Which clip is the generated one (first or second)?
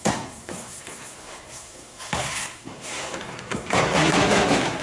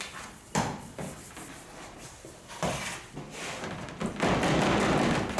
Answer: first